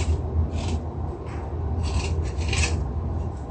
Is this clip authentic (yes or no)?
yes